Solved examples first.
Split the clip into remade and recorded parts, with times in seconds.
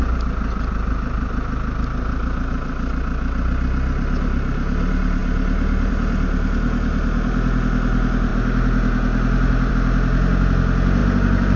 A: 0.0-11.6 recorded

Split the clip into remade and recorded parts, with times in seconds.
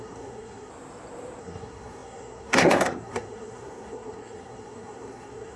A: 0.0-0.7 remade; 0.7-1.4 recorded; 1.4-5.6 remade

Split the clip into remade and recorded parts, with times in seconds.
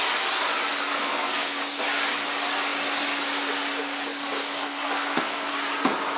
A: 0.0-0.9 recorded; 0.9-1.6 remade; 1.6-4.4 recorded; 4.4-5.5 remade; 5.5-6.2 recorded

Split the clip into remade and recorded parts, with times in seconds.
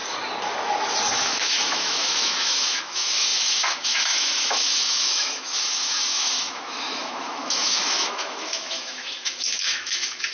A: 0.0-1.1 recorded; 1.1-10.3 remade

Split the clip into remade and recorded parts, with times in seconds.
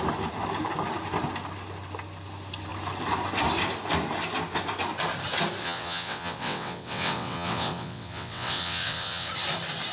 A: 0.0-5.6 recorded; 5.6-9.3 remade; 9.3-9.9 recorded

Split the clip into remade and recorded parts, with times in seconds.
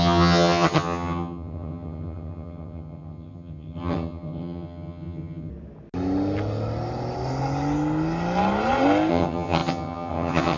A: 0.0-5.5 remade; 5.5-9.1 recorded; 9.1-10.6 remade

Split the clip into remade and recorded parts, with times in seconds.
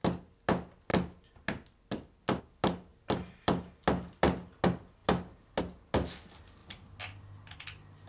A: 0.0-8.1 recorded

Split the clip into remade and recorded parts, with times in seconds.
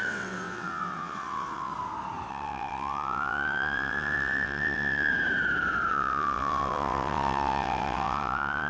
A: 0.0-1.7 remade; 1.7-2.3 recorded; 2.3-5.1 remade; 5.1-5.9 recorded; 5.9-8.7 remade